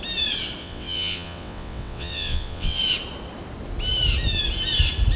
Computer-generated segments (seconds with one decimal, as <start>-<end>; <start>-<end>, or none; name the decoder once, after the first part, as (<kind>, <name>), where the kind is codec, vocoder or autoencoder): 0.6-2.8 (vocoder, WaveNeXt)